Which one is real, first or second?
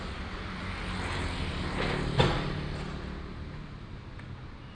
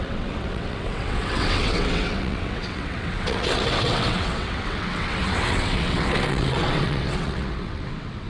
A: first